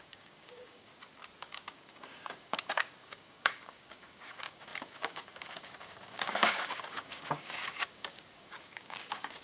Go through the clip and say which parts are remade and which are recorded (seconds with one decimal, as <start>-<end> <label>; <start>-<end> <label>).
0.0-0.9 remade; 0.9-1.4 recorded; 1.4-9.4 remade